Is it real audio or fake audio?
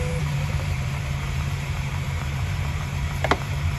fake